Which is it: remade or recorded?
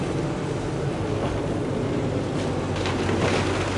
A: recorded